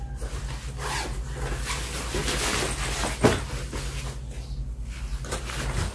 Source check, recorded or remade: recorded